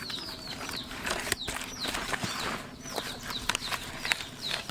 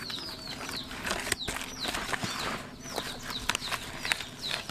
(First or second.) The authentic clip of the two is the second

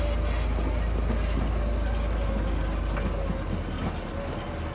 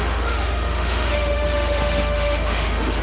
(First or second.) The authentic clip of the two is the first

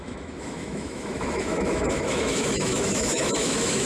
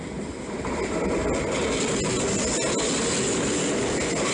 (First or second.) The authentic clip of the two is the second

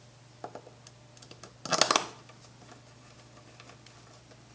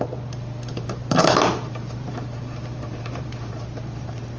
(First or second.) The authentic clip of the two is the first